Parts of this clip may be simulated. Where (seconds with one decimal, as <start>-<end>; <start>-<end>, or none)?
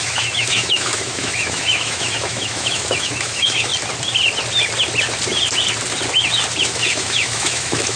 0.0-3.7; 6.6-8.0